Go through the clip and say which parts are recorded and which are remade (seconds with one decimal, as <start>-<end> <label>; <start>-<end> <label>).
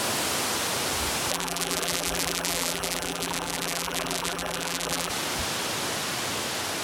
0.0-1.3 recorded; 1.3-5.1 remade; 5.1-6.8 recorded